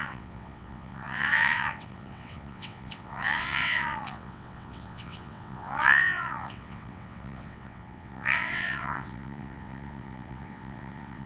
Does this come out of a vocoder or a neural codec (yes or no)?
yes